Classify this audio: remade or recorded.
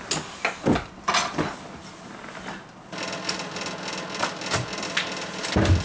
recorded